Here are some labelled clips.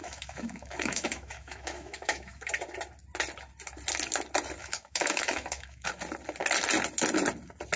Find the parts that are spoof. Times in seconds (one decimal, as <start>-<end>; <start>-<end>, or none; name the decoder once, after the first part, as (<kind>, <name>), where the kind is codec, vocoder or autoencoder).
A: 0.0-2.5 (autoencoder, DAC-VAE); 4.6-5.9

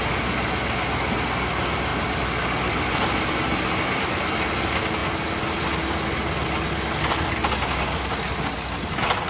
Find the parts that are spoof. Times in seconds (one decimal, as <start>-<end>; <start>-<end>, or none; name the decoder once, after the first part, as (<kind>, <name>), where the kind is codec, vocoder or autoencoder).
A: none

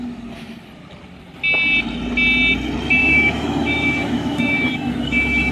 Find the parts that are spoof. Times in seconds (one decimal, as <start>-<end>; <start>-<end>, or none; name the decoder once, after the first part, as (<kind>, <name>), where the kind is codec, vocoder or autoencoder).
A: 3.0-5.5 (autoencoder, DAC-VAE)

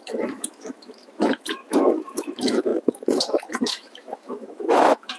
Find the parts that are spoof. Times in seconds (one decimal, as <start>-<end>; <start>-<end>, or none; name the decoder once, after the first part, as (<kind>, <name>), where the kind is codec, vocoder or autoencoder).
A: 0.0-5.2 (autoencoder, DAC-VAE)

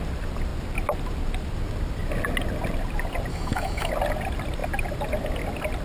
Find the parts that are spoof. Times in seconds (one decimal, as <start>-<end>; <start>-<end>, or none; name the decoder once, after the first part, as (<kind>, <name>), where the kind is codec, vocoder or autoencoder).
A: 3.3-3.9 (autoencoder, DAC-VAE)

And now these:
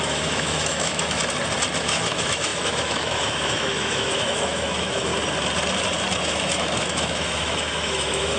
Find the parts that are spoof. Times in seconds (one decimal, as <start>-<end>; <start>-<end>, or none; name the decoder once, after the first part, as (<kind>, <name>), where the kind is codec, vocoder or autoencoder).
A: 0.0-1.2 (autoencoder, DAC-VAE); 1.8-5.1; 6.2-8.4

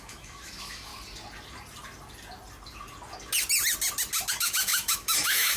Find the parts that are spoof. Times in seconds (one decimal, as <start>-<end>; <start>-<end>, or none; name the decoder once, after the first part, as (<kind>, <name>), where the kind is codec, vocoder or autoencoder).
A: 0.0-0.9 (autoencoder, DAC-VAE); 4.3-5.6